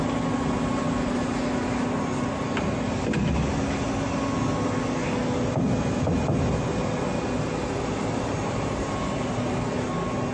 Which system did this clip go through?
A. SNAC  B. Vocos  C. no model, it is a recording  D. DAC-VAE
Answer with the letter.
C